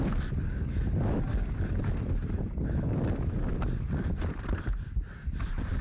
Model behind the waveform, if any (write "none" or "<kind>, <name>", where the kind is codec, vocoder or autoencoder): none